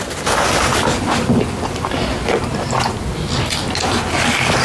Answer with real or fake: real